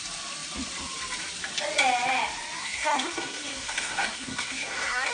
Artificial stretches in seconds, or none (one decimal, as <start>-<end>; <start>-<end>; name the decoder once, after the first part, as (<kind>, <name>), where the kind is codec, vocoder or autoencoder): 2.6-5.1 (codec, SNAC)